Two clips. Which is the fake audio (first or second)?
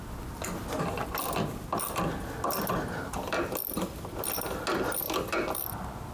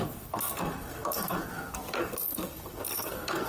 second